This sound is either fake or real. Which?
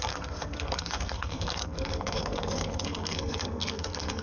fake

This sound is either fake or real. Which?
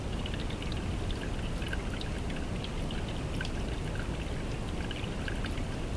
real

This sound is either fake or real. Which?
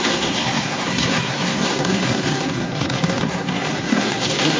fake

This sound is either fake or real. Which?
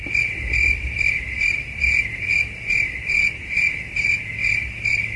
real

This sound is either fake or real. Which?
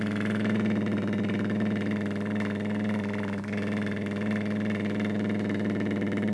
real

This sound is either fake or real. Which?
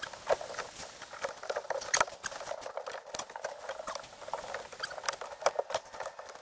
real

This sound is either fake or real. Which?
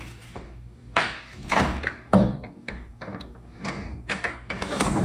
fake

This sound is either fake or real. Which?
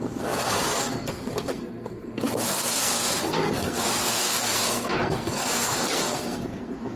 fake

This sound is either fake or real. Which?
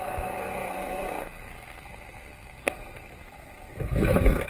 fake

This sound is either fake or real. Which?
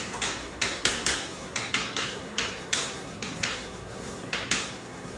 fake